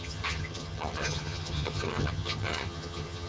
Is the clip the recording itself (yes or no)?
no